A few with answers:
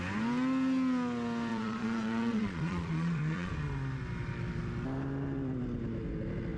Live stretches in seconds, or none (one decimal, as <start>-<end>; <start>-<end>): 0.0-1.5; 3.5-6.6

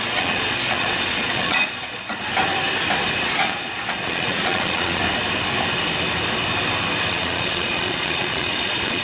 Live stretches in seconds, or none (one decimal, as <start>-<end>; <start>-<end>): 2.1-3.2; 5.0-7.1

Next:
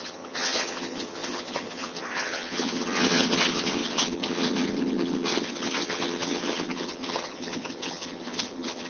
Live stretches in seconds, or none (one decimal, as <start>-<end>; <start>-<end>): none

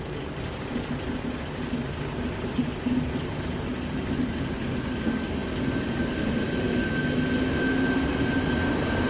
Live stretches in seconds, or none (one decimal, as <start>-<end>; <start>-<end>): 0.0-9.1

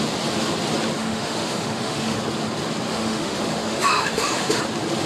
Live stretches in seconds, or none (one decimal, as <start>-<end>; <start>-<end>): 0.0-1.0; 2.2-2.9; 4.6-5.1